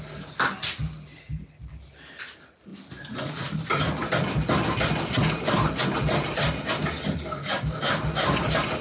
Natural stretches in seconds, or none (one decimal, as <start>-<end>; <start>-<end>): 0.0-8.8